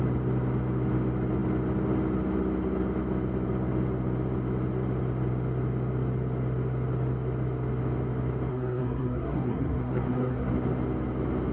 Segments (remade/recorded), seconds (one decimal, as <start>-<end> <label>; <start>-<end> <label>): 0.0-8.5 recorded; 8.5-10.5 remade; 10.5-11.5 recorded